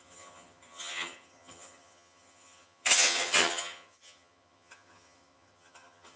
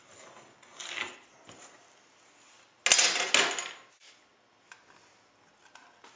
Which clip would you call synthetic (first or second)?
first